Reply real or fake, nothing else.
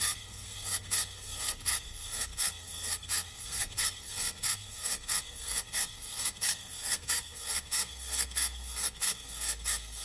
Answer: fake